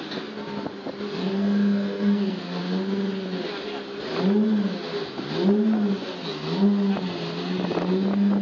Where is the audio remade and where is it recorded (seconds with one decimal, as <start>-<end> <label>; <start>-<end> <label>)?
0.0-1.2 recorded; 1.2-2.6 remade; 2.6-8.4 recorded

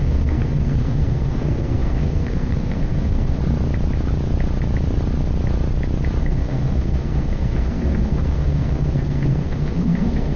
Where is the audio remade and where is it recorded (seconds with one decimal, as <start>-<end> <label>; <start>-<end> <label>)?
0.0-3.4 remade; 3.4-6.2 recorded; 6.2-10.4 remade

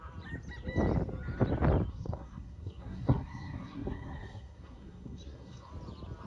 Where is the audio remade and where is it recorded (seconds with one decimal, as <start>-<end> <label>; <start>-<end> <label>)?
0.0-1.9 recorded; 1.9-5.7 remade; 5.7-6.3 recorded